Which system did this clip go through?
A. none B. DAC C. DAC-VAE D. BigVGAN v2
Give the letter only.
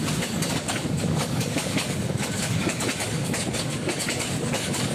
B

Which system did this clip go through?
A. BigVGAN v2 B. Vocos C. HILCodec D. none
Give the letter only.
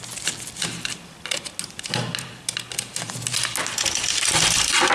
D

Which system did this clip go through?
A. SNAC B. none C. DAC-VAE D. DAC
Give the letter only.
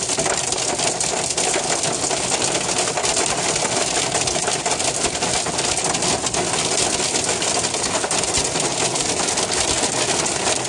B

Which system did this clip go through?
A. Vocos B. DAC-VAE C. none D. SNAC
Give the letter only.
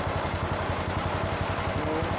C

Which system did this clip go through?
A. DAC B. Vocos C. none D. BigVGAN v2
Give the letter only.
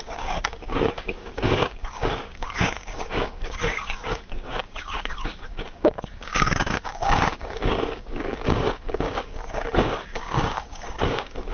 A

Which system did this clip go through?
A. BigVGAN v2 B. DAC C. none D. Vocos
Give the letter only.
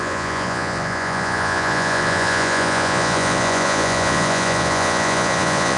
D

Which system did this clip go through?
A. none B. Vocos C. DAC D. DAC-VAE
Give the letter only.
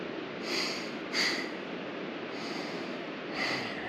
A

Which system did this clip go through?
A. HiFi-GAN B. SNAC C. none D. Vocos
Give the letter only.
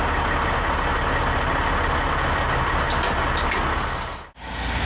C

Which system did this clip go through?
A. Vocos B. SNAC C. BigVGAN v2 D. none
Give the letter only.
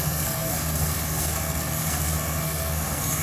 B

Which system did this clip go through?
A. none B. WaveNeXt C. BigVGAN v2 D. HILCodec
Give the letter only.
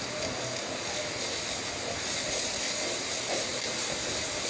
A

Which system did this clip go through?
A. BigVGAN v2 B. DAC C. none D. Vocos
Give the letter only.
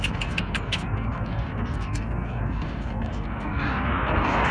B